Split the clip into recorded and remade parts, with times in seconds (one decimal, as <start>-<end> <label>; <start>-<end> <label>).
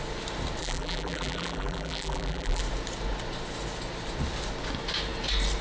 0.0-0.6 recorded; 0.6-2.6 remade; 2.6-5.6 recorded